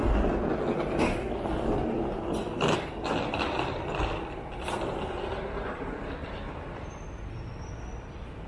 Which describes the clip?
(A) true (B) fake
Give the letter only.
A